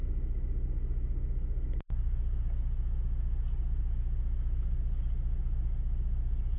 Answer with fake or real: real